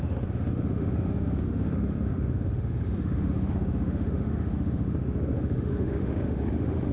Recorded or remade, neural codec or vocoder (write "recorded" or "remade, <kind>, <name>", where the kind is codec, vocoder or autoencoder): remade, autoencoder, DAC-VAE